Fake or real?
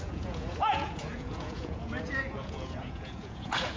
fake